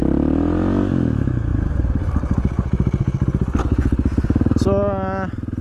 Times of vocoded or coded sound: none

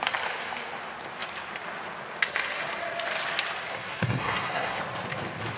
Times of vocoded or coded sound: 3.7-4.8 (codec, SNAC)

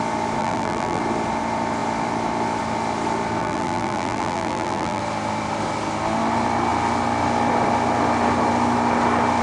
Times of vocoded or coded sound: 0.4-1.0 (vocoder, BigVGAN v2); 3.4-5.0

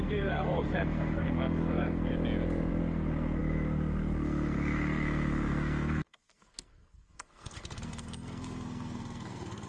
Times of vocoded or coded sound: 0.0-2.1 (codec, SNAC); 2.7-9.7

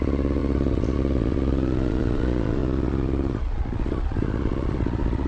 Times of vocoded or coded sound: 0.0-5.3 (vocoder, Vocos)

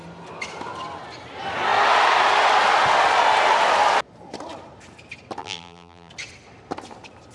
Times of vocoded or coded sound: 5.4-6.1 (vocoder, BigVGAN v2)

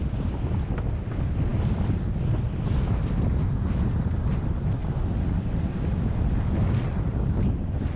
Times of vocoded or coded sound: none